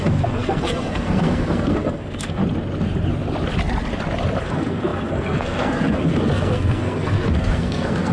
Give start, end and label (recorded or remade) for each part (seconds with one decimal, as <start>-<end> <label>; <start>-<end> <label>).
0.0-2.4 remade; 2.4-4.4 recorded; 4.4-8.1 remade